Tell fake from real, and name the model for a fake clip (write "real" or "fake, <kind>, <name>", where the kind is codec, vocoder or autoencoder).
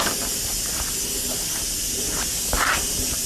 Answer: real